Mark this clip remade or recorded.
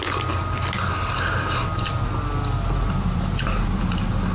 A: recorded